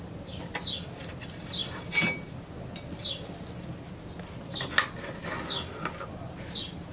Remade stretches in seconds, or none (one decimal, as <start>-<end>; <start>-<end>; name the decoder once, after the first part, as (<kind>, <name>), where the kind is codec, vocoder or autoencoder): none